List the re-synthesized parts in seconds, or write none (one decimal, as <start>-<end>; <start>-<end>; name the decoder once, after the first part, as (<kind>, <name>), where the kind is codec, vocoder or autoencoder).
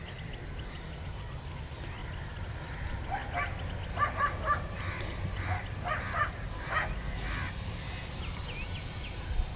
0.0-2.0 (vocoder, BigVGAN v2); 2.7-3.2; 4.0-9.6